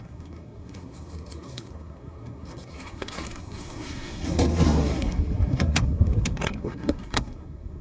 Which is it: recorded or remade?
remade